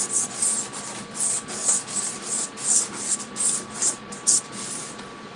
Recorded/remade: recorded